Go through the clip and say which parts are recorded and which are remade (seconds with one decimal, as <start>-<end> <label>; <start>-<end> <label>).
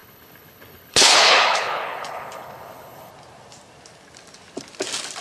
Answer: 0.0-3.1 remade; 3.1-5.2 recorded